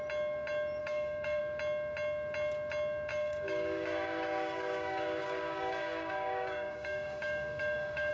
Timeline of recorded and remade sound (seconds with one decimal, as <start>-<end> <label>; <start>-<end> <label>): 0.0-0.8 recorded; 0.8-1.4 remade; 1.4-3.1 recorded; 3.1-8.1 remade

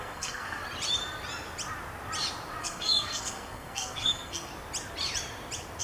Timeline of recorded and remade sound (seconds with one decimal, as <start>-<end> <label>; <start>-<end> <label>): 0.0-0.6 remade; 0.6-2.6 recorded; 2.6-4.5 remade; 4.5-5.8 recorded